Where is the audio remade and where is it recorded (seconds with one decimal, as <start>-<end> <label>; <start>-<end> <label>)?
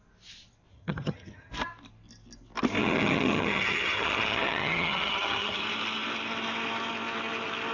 0.0-0.7 recorded; 0.7-1.5 remade; 1.5-2.8 recorded; 2.8-5.6 remade; 5.6-7.7 recorded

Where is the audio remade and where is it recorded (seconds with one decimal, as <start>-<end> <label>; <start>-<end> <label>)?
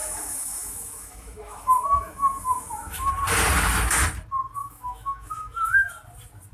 0.0-3.1 remade; 3.1-4.6 recorded; 4.6-5.9 remade; 5.9-6.5 recorded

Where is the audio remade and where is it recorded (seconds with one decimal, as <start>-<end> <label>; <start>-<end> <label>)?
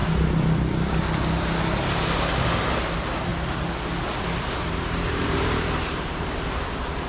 0.0-2.9 recorded; 2.9-3.3 remade; 3.3-4.4 recorded; 4.4-7.1 remade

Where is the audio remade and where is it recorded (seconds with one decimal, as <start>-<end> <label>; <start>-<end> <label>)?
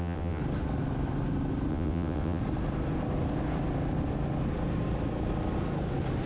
0.0-0.4 remade; 0.4-1.7 recorded; 1.7-2.4 remade; 2.4-6.3 recorded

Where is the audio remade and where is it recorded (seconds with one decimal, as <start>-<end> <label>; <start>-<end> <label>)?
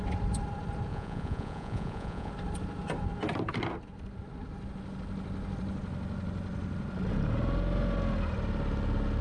0.0-0.9 recorded; 0.9-2.3 remade; 2.3-9.2 recorded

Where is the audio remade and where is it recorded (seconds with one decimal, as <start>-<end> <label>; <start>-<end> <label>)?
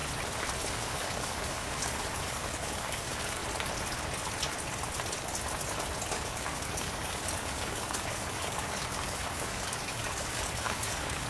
0.0-0.7 recorded; 0.7-3.4 remade; 3.4-6.1 recorded; 6.1-11.3 remade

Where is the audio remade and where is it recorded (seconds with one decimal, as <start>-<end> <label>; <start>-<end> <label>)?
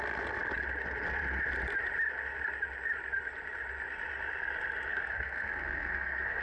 0.0-4.9 recorded; 4.9-6.4 remade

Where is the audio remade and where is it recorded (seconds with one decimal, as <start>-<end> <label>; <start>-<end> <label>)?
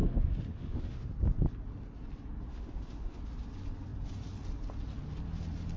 0.0-1.1 remade; 1.1-2.5 recorded; 2.5-3.2 remade; 3.2-5.8 recorded